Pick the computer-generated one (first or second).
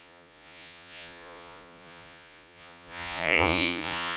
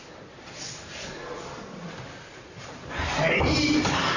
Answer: first